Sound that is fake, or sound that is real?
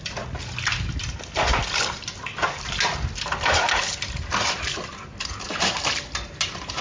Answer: real